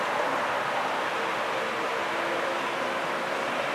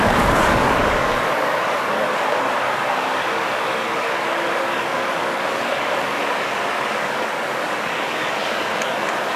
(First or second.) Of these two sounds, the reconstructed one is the second